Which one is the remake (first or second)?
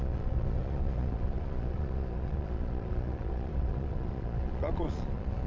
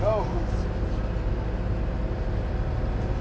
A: first